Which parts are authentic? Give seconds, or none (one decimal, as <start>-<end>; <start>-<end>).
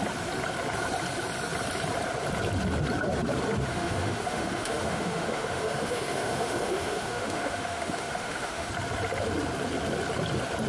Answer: 0.0-3.7; 8.7-10.7